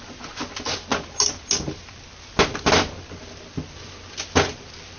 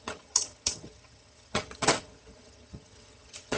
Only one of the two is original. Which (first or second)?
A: first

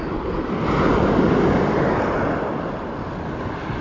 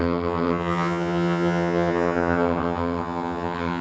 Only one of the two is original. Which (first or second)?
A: first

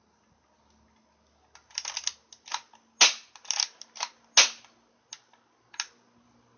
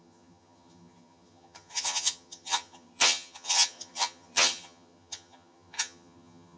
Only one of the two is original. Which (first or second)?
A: first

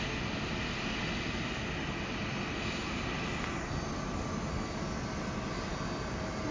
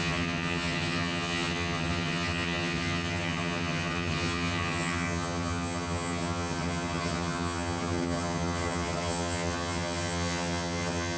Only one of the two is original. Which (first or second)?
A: first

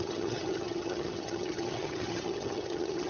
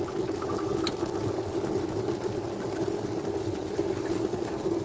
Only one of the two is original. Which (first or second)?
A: second